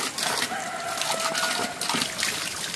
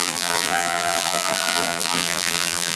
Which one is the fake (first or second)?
second